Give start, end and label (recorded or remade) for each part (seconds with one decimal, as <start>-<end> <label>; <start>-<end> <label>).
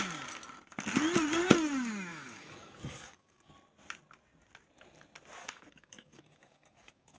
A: 0.0-2.1 recorded; 2.1-3.5 remade; 3.5-5.4 recorded; 5.4-7.2 remade